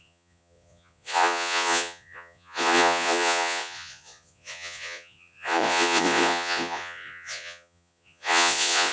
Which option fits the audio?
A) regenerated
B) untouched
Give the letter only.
A